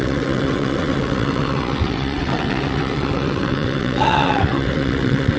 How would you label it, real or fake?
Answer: fake